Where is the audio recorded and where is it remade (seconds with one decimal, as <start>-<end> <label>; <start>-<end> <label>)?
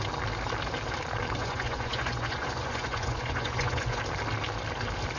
0.0-1.4 recorded; 1.4-4.0 remade; 4.0-5.2 recorded